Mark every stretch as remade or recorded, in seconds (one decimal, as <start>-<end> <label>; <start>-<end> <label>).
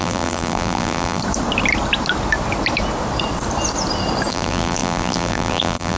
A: 0.0-1.2 remade; 1.2-4.3 recorded; 4.3-6.0 remade